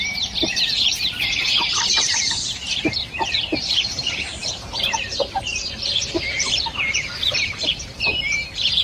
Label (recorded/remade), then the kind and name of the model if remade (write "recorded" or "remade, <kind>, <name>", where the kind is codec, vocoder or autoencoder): remade, vocoder, BigVGAN v2